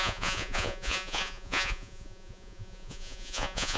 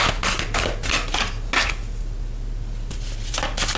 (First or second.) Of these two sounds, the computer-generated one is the first